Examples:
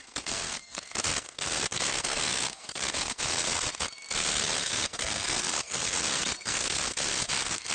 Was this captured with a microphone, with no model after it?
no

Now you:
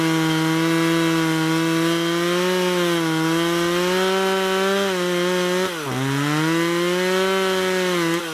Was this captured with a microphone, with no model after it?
yes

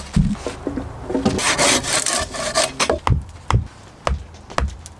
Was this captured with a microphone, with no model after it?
yes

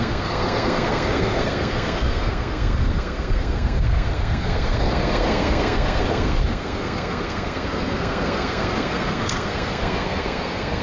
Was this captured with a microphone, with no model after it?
no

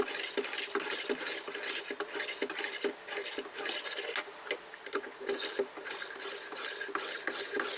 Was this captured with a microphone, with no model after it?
yes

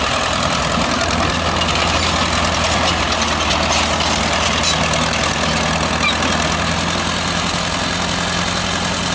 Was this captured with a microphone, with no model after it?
yes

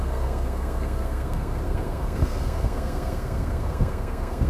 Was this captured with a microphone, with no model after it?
no